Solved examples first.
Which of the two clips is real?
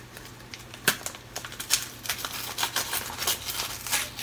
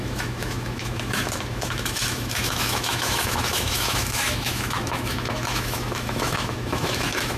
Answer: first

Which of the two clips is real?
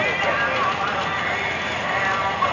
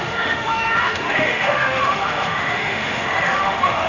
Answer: first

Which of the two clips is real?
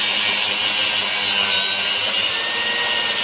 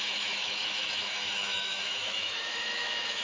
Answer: first